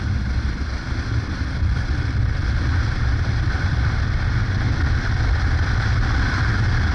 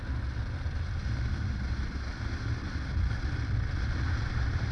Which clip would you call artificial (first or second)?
first